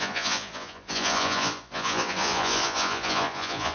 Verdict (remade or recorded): remade